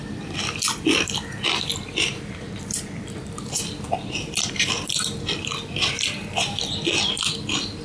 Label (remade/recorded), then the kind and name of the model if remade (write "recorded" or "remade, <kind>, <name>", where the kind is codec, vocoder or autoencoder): remade, vocoder, BigVGAN v2